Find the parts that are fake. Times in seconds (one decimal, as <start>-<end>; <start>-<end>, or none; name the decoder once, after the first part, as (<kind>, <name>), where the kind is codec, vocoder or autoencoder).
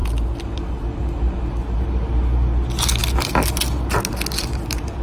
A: none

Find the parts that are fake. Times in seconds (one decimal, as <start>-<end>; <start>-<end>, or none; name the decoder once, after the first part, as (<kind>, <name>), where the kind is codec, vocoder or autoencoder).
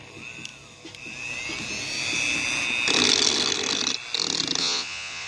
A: 4.6-5.3 (vocoder, Vocos)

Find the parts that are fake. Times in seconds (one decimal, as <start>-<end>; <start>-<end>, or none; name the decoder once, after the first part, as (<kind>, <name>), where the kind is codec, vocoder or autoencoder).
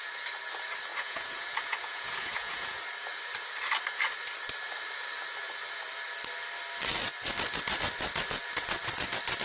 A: 0.9-2.8 (vocoder, Vocos)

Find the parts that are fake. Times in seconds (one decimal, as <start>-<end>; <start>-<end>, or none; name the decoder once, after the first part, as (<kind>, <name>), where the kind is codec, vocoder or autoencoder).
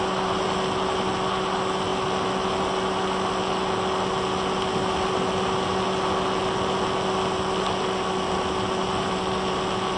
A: none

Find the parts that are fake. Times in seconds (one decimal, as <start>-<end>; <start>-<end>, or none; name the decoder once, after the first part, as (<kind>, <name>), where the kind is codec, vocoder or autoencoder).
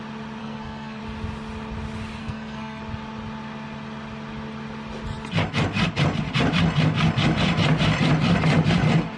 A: 0.4-1.0 (codec, SNAC); 2.2-2.8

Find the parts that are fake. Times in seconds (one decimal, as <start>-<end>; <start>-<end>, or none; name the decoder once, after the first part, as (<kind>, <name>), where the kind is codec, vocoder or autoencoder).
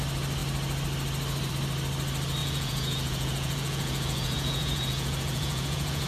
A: 2.4-6.1 (vocoder, Vocos)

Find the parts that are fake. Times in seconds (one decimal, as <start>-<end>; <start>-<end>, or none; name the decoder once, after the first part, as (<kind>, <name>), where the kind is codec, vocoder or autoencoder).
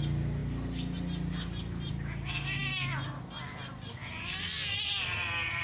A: none